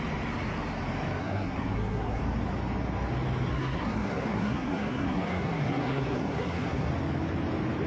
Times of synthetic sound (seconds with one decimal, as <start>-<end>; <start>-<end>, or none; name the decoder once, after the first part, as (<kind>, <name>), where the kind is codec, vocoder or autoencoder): 1.2-2.2 (codec, SNAC); 3.5-6.9

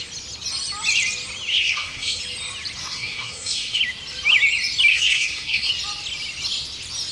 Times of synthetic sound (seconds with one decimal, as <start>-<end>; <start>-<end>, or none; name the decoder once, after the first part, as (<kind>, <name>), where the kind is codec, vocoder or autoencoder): 1.5-2.2 (codec, SNAC); 2.8-3.8; 4.9-5.7